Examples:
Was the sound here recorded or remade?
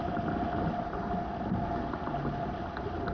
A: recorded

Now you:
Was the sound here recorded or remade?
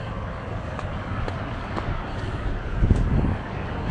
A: remade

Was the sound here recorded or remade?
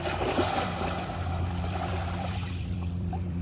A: remade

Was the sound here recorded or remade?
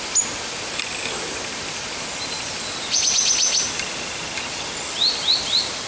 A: recorded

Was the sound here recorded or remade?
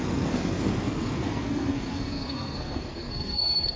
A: remade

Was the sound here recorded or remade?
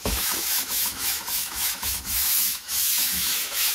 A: remade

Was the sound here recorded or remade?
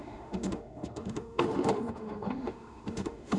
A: remade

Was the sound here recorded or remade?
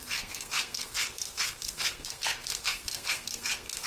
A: remade